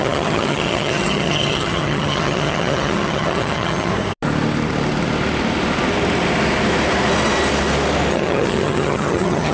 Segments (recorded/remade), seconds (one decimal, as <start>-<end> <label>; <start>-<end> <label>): 0.0-3.9 remade; 3.9-8.1 recorded; 8.1-9.5 remade